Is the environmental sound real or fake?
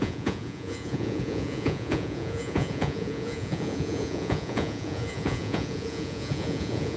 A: fake